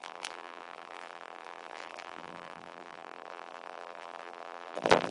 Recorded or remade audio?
remade